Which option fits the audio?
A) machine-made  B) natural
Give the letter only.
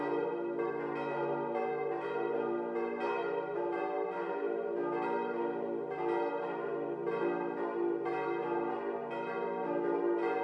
B